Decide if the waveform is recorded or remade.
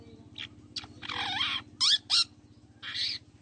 recorded